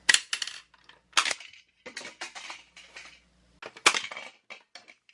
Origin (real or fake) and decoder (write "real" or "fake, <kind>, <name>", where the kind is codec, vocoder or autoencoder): real